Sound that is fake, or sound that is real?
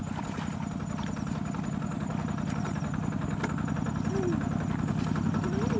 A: real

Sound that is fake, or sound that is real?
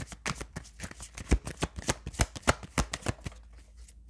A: real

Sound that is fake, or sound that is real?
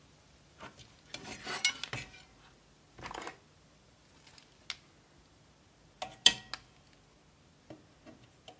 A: real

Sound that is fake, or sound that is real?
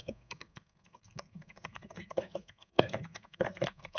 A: fake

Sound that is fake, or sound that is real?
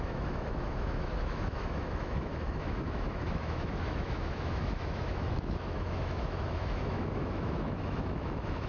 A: fake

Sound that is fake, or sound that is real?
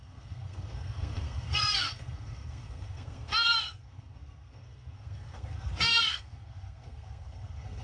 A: fake